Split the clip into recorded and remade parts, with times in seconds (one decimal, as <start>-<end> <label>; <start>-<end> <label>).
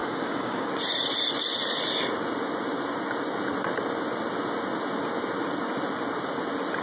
0.0-0.7 remade; 0.7-6.8 recorded